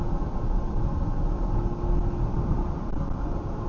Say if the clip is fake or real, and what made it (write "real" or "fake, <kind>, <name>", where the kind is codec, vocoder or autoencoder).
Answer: real